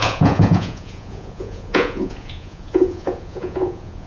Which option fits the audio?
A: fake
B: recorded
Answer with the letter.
A